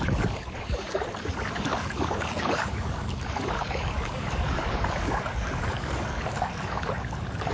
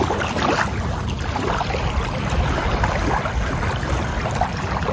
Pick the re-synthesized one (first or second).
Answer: first